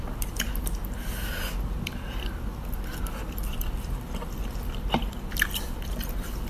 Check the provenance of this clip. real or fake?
real